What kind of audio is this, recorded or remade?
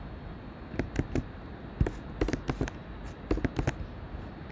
recorded